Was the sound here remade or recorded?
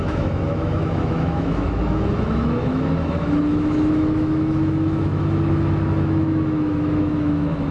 remade